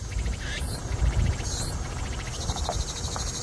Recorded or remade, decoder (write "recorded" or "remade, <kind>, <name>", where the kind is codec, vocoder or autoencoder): recorded